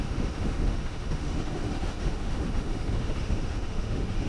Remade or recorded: remade